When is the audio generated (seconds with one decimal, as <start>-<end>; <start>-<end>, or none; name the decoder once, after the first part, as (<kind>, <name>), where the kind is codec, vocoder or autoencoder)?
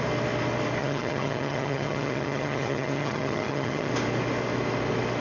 0.8-3.9 (vocoder, HiFi-GAN)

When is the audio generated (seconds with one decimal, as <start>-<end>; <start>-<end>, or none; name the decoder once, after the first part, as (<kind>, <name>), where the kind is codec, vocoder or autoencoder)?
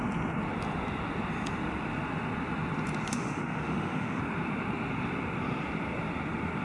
3.1-4.2 (autoencoder, DAC-VAE)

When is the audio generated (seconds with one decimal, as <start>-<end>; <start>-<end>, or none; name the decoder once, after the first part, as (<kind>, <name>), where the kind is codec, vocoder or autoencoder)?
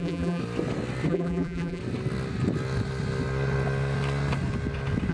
0.0-0.4 (vocoder, BigVGAN v2); 1.1-1.8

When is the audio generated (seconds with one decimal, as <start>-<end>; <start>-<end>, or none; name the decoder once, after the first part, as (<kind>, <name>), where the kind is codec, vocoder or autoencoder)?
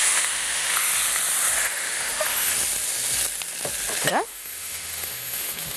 0.0-0.9 (autoencoder, DAC-VAE); 1.6-2.5; 4.1-5.8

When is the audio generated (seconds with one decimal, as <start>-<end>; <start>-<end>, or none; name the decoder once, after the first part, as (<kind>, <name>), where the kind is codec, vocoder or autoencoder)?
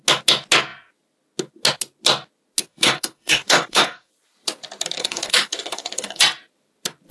2.6-4.1 (codec, DAC); 5.0-6.2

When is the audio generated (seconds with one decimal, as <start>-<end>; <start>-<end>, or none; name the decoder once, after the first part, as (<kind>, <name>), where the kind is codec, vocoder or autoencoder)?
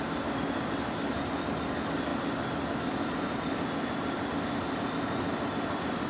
2.1-6.1 (vocoder, BigVGAN v2)